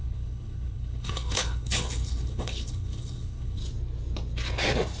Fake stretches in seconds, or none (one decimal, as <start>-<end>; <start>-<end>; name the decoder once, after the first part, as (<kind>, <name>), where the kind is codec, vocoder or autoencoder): 0.0-3.6 (codec, HILCodec)

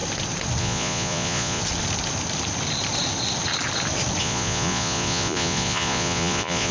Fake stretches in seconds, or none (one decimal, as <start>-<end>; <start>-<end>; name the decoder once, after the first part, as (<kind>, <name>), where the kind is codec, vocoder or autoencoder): 0.6-1.6 (vocoder, Vocos); 4.2-6.7

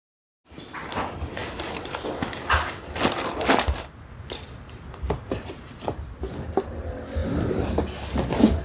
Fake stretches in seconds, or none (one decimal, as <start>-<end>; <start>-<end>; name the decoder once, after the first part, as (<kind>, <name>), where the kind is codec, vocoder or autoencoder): none

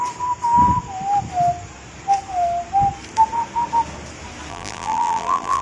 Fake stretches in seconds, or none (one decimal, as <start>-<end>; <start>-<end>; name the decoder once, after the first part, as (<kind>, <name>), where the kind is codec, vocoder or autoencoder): 4.5-5.6 (vocoder, BigVGAN v2)

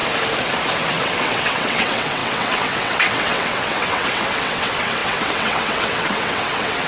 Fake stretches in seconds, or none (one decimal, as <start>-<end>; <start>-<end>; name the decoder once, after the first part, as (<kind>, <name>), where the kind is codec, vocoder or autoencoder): 0.9-6.9 (vocoder, WaveNeXt)

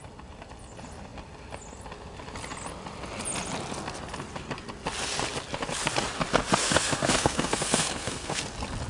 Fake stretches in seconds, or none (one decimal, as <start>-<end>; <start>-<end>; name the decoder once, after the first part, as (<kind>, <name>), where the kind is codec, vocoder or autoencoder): 6.6-8.4 (codec, SNAC)